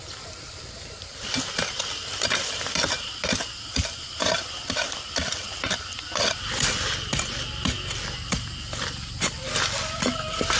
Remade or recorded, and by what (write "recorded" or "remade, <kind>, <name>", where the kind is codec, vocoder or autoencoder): remade, vocoder, BigVGAN v2